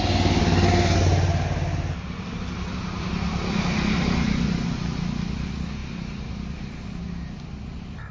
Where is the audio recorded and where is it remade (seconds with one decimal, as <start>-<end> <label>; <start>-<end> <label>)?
0.0-8.1 recorded